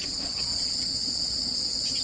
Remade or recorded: remade